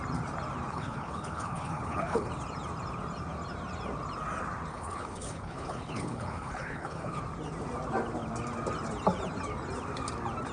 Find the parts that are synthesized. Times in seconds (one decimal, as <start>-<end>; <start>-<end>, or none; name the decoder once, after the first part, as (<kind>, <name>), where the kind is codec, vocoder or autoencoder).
0.7-2.3 (codec, HILCodec); 4.7-7.2